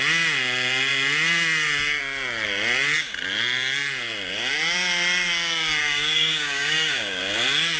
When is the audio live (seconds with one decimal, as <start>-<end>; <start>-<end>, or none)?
0.0-5.8; 7.2-7.8